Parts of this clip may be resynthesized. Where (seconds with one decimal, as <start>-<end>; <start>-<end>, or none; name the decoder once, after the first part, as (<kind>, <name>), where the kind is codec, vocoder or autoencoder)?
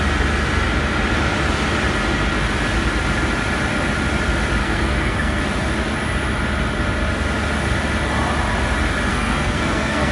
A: 4.6-5.4 (codec, SNAC); 9.1-10.1